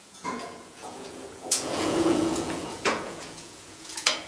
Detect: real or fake fake